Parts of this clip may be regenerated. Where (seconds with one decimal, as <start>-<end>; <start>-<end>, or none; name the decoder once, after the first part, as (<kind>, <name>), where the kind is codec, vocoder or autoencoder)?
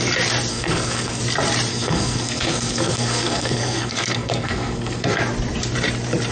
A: 0.5-1.2 (codec, SNAC); 1.7-5.2